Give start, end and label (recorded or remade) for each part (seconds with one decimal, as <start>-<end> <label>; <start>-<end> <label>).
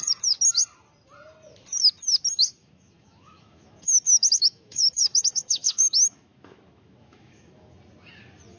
0.0-2.6 recorded; 2.6-7.7 remade; 7.7-8.6 recorded